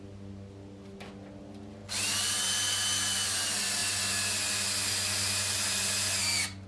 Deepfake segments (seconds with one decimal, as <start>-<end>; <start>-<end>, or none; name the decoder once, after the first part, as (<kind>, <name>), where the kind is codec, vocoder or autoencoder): none